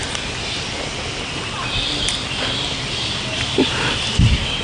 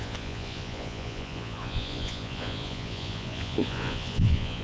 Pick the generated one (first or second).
second